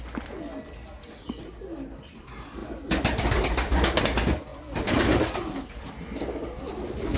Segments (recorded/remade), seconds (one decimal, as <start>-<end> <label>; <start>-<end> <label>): 0.0-7.2 recorded